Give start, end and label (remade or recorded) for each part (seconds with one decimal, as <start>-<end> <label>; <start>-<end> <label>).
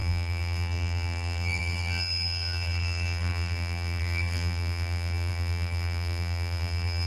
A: 0.0-7.1 remade